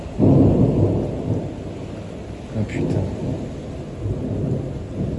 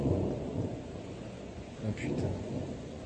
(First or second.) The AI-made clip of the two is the second